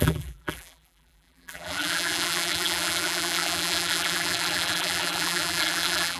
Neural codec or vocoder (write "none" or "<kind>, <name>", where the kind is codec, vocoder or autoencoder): vocoder, BigVGAN v2